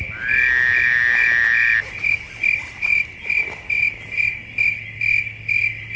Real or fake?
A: real